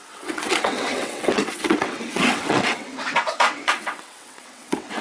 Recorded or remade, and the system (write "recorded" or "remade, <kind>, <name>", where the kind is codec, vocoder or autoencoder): remade, vocoder, WaveNeXt